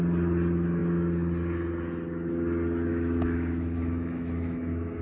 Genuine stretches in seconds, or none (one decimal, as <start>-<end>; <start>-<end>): 0.0-2.9